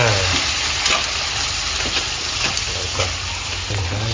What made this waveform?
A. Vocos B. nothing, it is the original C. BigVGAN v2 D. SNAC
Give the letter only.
B